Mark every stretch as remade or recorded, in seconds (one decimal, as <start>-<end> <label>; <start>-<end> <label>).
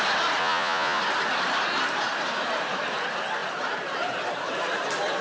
0.0-0.4 recorded; 0.4-1.0 remade; 1.0-5.2 recorded